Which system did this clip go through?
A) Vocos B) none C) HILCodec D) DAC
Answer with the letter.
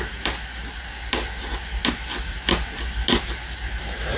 B